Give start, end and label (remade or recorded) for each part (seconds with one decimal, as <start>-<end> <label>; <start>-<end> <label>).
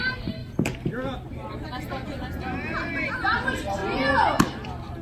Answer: 0.0-3.8 remade; 3.8-5.0 recorded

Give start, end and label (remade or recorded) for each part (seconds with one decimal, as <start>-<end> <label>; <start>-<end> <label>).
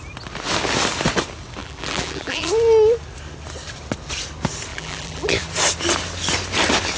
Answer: 0.0-1.6 recorded; 1.6-2.5 remade; 2.5-4.7 recorded; 4.7-5.4 remade; 5.4-7.0 recorded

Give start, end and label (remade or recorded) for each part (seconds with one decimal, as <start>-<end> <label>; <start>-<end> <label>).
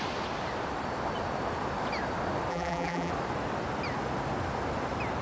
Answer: 0.0-2.5 recorded; 2.5-3.1 remade; 3.1-5.2 recorded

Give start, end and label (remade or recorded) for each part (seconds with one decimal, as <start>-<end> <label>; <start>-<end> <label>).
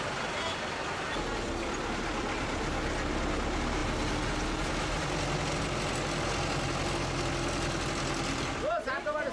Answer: 0.0-9.3 recorded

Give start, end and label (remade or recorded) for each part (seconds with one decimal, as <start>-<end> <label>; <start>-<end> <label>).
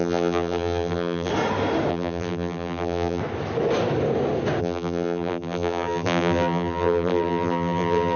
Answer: 0.0-1.3 remade; 1.3-1.9 recorded; 1.9-3.2 remade; 3.2-4.6 recorded; 4.6-8.2 remade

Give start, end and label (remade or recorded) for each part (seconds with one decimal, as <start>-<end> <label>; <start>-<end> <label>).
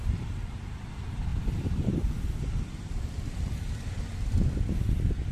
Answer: 0.0-5.3 remade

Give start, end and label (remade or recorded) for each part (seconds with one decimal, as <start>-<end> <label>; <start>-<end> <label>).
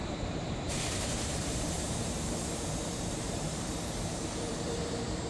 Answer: 0.0-5.3 remade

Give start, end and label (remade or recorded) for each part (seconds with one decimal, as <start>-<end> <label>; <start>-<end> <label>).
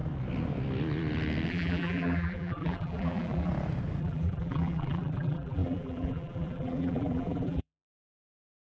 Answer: 0.0-1.5 recorded; 1.5-3.5 remade; 3.5-4.0 recorded; 4.0-8.8 remade